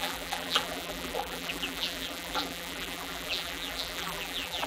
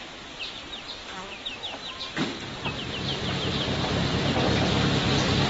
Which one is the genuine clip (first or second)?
second